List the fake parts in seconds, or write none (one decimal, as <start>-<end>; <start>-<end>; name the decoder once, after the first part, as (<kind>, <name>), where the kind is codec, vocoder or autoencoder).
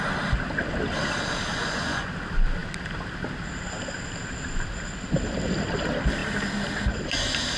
1.5-2.1 (vocoder, Vocos)